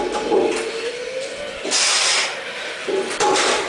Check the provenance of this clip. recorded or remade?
remade